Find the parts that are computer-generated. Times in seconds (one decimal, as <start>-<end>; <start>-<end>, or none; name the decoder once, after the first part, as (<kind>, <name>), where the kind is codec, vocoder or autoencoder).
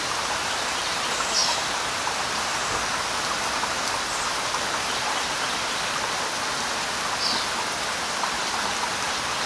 none